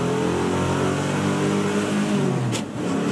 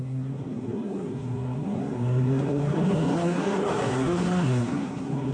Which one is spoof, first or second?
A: second